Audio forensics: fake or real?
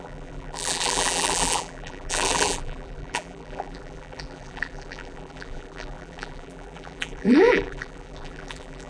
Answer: fake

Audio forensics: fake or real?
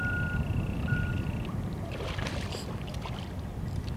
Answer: fake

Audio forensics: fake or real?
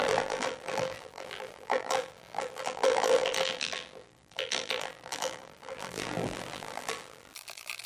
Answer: fake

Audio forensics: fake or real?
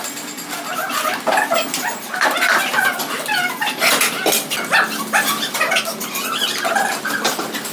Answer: real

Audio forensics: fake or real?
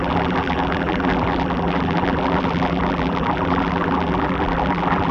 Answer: fake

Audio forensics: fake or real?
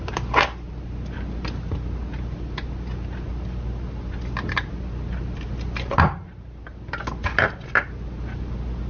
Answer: real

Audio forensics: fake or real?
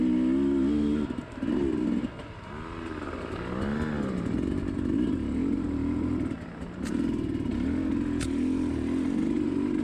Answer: real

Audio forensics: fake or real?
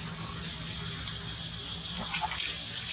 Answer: real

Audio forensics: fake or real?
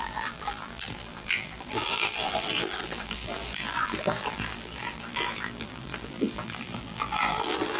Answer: fake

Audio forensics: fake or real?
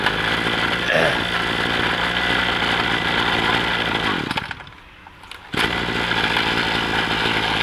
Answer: real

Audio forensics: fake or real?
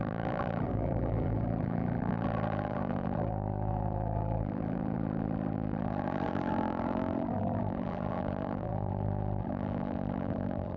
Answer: fake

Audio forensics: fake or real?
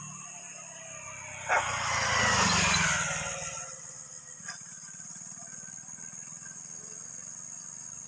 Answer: real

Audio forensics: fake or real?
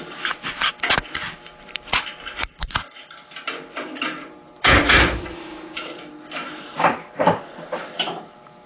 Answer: fake